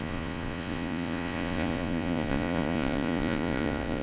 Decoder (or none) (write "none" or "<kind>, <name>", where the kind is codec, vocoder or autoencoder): vocoder, Vocos